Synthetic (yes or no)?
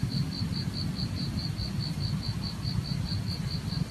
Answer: no